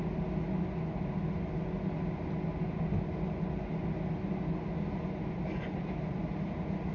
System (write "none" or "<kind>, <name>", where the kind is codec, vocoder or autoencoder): none